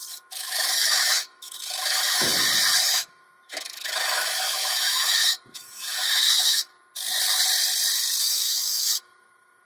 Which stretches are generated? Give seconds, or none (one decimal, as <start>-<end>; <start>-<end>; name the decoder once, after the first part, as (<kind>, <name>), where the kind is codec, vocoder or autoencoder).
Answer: 0.0-2.3 (autoencoder, DAC-VAE); 2.8-6.7; 8.2-9.6